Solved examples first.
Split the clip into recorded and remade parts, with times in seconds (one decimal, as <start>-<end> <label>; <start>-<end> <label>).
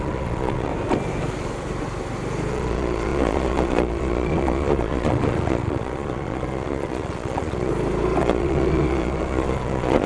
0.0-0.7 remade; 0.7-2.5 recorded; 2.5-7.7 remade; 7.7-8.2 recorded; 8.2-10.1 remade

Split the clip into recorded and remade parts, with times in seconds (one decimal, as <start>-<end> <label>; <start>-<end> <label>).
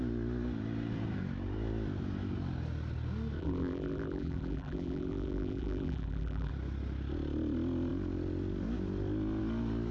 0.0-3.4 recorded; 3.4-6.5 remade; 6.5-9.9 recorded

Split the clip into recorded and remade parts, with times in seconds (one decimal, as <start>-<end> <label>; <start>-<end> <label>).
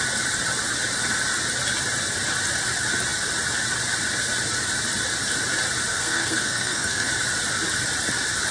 0.0-5.9 recorded; 5.9-7.1 remade; 7.1-8.5 recorded